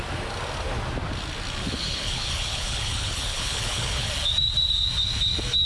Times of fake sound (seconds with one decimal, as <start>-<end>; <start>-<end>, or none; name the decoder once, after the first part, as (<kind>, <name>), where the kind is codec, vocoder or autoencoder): 1.6-4.1 (codec, HILCodec)